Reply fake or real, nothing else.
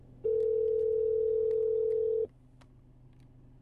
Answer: real